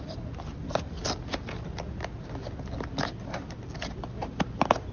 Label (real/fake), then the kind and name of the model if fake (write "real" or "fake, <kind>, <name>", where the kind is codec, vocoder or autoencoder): real